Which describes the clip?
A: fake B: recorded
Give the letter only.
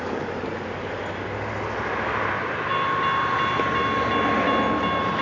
B